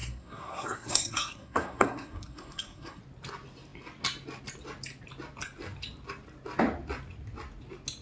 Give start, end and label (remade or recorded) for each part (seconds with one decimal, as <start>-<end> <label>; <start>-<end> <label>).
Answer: 0.0-3.0 remade; 3.0-8.0 recorded